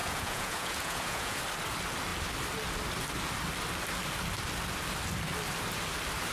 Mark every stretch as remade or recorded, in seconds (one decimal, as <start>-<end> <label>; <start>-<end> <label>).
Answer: 0.0-1.4 remade; 1.4-6.3 recorded